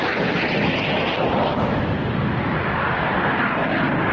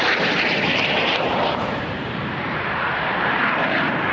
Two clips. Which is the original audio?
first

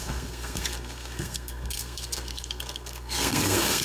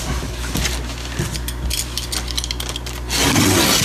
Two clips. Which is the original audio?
second